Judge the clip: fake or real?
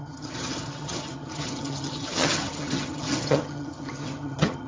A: fake